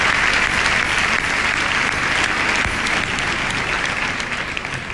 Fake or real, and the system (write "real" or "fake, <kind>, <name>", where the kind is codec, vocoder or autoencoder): real